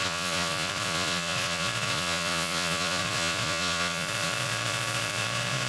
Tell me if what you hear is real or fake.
fake